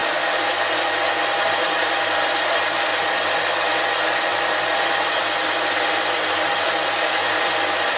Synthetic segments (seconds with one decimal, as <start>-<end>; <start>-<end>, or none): none